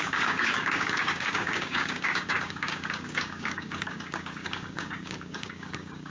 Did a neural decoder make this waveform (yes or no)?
yes